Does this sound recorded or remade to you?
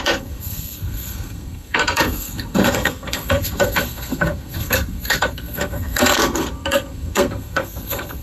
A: remade